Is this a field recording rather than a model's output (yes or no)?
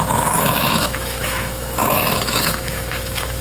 no